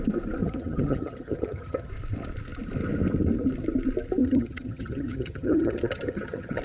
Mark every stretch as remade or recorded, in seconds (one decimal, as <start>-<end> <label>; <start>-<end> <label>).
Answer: 0.0-0.4 recorded; 0.4-1.9 remade; 1.9-4.2 recorded; 4.2-6.6 remade